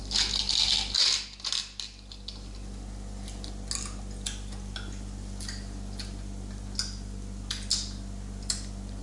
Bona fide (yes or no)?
yes